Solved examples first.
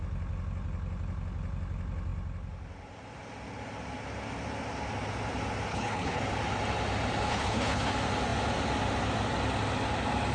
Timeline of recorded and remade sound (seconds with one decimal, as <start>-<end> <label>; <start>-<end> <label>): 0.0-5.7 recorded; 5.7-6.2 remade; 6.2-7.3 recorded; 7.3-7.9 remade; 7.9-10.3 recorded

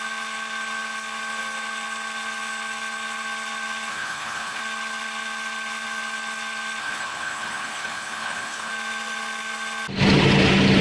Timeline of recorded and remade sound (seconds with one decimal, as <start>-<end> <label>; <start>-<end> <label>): 0.0-3.9 recorded; 3.9-4.6 remade; 4.6-6.8 recorded; 6.8-8.7 remade; 8.7-10.8 recorded

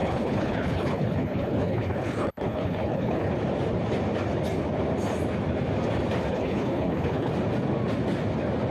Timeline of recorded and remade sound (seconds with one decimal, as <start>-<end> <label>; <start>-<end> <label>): 0.0-3.3 remade; 3.3-6.3 recorded; 6.3-7.3 remade; 7.3-8.7 recorded